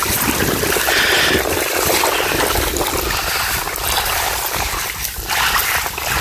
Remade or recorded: recorded